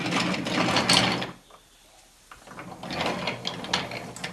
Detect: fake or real real